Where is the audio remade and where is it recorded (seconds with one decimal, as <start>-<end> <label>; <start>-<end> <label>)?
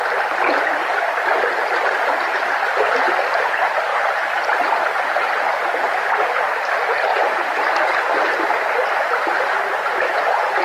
0.0-3.9 recorded; 3.9-5.9 remade; 5.9-7.1 recorded; 7.1-7.7 remade; 7.7-10.6 recorded